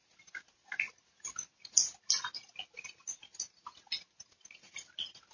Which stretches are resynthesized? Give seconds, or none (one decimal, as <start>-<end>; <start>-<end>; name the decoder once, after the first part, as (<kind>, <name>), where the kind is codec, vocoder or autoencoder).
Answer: none